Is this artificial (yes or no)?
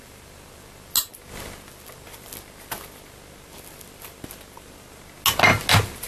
no